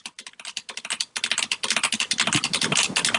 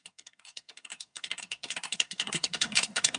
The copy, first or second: second